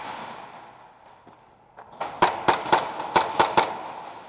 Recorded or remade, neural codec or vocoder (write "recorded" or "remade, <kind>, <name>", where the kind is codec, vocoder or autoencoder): recorded